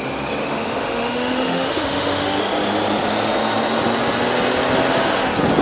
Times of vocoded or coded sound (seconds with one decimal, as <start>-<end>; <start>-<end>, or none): 0.4-2.4